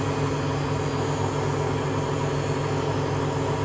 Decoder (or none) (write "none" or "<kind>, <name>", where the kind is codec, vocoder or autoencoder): none